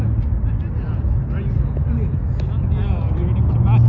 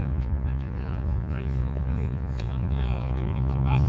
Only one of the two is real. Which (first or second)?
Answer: first